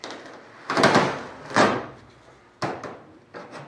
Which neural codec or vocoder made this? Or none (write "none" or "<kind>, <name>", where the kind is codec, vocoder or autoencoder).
none